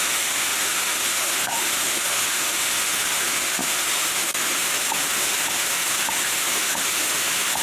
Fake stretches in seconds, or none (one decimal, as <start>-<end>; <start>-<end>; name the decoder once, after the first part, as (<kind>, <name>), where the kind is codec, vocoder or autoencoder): 0.0-7.6 (autoencoder, DAC-VAE)